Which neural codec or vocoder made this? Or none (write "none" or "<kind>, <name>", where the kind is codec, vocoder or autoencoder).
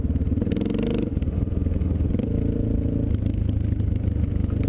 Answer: none